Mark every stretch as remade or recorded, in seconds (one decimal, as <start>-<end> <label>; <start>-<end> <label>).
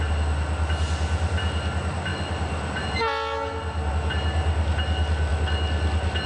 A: 0.0-6.3 recorded